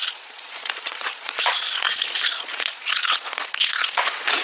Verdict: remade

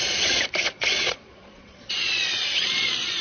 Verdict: remade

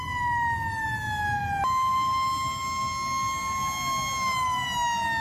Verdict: recorded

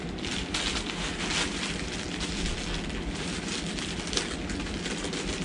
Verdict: recorded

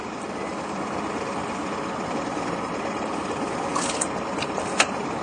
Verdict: recorded